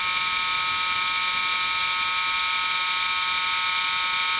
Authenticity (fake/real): real